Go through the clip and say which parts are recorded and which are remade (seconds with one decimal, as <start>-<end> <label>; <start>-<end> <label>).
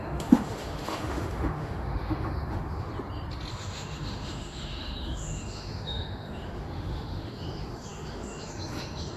0.0-2.9 remade; 2.9-3.5 recorded; 3.5-9.2 remade